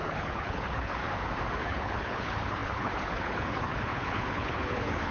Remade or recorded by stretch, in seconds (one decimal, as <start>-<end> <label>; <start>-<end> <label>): 0.0-1.0 remade; 1.0-1.6 recorded; 1.6-5.1 remade